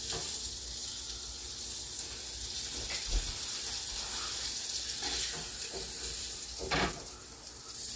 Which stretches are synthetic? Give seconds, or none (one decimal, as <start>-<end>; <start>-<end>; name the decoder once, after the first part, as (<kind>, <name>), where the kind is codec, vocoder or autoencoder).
none

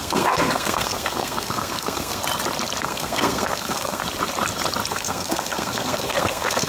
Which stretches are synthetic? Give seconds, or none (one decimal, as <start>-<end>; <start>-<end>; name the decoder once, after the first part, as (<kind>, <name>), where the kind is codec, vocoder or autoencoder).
0.0-2.2 (codec, SNAC); 2.8-4.0; 4.9-6.7